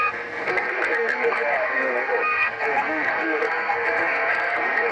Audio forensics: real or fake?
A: fake